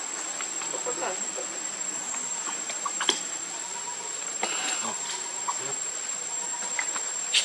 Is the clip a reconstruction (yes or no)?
yes